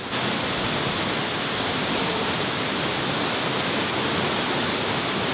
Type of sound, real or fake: real